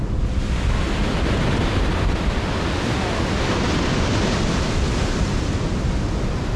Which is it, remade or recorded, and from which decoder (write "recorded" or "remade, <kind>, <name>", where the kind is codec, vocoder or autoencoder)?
recorded